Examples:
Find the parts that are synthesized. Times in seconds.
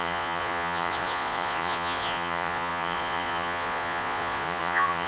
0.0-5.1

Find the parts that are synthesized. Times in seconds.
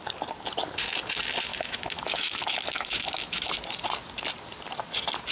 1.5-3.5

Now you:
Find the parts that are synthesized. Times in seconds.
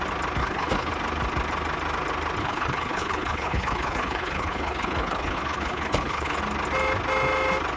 0.4-0.9; 2.4-6.4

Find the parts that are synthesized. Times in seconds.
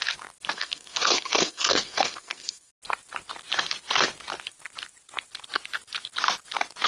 0.5-2.7